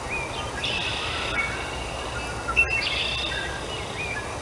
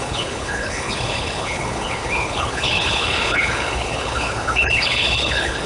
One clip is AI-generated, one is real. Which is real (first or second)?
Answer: first